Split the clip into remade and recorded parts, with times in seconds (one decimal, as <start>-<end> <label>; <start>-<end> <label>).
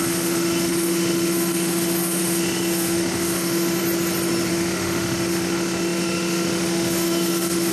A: 0.0-3.8 remade; 3.8-4.5 recorded; 4.5-7.7 remade